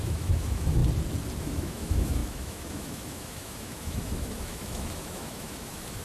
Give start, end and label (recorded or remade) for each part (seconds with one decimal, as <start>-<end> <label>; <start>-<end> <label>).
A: 0.0-0.8 remade; 0.8-1.4 recorded; 1.4-6.0 remade